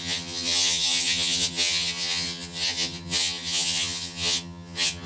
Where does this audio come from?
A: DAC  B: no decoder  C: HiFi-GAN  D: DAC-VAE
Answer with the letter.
C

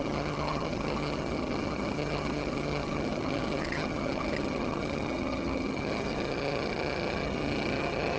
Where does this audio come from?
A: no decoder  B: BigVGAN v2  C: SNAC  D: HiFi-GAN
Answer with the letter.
D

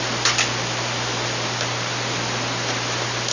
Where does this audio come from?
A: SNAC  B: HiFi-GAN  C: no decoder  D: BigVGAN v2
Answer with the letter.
C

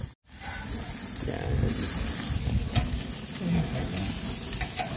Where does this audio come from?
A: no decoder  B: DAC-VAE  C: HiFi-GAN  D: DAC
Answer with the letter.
A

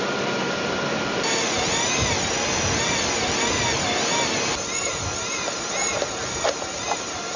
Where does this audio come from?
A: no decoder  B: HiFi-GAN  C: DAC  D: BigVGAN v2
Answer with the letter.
A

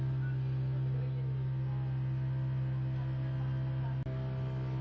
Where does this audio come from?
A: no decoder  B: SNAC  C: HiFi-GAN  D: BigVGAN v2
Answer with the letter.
A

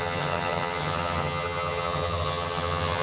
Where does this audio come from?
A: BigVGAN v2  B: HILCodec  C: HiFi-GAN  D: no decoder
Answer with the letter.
C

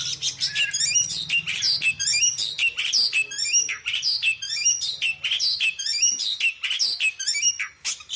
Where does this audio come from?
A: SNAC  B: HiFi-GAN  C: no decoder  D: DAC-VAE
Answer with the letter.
C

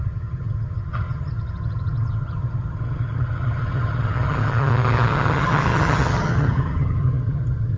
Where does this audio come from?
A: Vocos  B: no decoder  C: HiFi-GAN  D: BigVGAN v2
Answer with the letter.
C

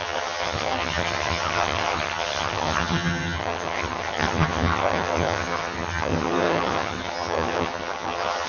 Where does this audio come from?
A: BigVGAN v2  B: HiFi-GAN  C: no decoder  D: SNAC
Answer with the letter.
B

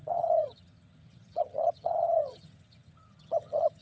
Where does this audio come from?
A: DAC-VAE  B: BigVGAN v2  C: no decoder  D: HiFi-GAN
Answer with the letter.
D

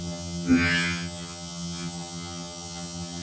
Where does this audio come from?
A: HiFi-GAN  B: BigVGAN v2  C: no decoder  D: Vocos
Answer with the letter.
A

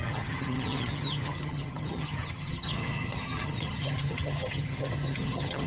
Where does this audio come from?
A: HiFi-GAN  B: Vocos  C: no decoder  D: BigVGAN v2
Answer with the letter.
A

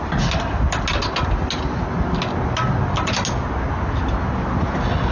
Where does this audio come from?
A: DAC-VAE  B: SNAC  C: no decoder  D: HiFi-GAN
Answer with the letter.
C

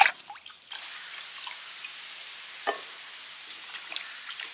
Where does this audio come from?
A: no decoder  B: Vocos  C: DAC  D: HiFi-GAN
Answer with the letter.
A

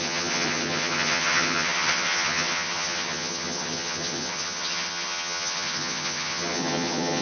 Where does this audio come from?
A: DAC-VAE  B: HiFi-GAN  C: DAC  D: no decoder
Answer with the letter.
B